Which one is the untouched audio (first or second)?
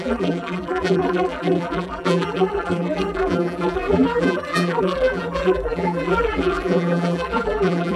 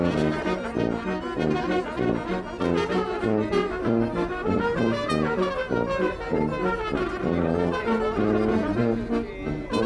second